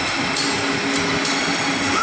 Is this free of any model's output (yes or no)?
yes